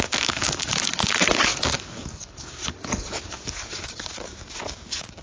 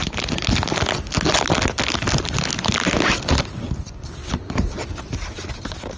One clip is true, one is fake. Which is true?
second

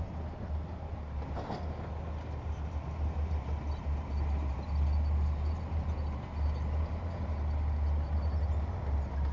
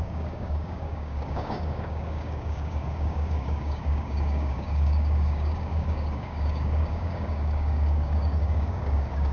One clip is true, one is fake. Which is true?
first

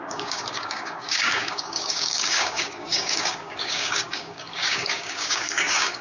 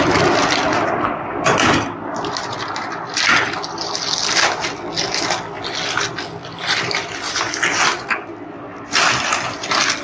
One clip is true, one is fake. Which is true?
second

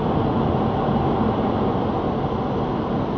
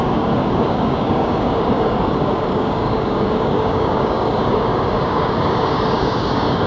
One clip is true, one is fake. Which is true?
first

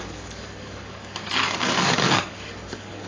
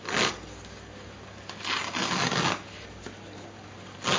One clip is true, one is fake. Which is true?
second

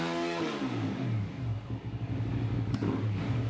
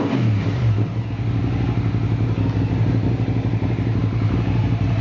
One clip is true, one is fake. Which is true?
second